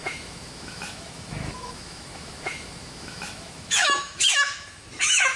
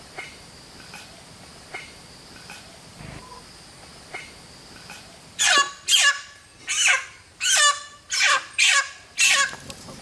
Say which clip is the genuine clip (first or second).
second